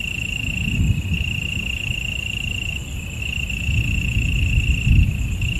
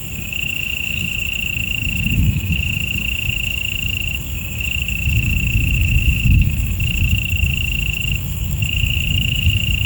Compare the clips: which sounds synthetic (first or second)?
second